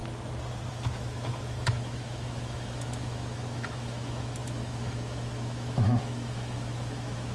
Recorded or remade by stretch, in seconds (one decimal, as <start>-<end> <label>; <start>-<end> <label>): 0.0-0.7 recorded; 0.7-7.3 remade